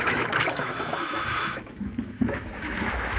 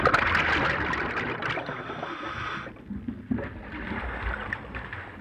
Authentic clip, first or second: second